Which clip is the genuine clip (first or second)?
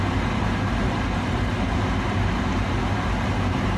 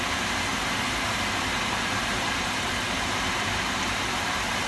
first